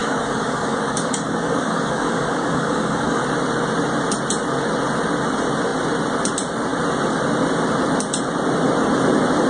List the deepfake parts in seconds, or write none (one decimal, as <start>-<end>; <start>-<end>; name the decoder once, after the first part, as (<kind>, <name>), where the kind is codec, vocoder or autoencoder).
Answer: 0.0-3.2 (codec, DAC)